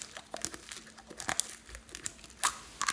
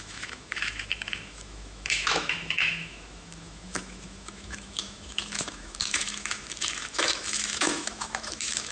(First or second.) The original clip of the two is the first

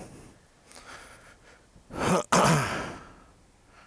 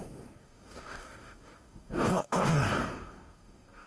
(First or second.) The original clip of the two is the first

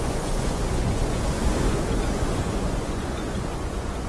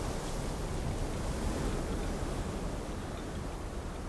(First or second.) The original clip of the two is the second